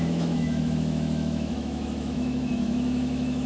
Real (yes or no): no